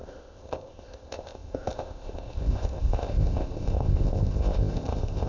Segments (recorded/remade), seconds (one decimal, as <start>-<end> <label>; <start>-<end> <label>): 0.0-5.3 remade

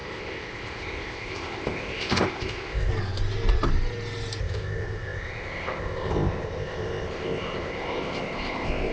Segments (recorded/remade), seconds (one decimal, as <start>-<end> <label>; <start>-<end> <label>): 0.0-2.9 remade; 2.9-4.4 recorded; 4.4-8.9 remade